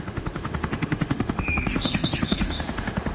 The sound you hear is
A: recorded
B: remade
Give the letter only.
B